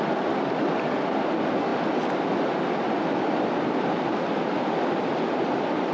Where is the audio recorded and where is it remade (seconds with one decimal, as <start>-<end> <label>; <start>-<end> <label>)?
0.0-5.9 recorded

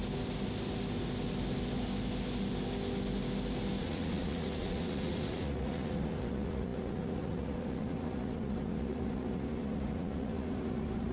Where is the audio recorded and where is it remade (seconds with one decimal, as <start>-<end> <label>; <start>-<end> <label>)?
0.0-3.8 recorded; 3.8-11.1 remade